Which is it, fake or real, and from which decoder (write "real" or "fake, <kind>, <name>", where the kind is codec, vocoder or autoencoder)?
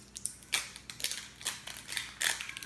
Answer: real